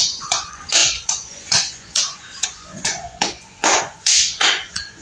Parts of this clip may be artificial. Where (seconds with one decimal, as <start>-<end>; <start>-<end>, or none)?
0.0-5.0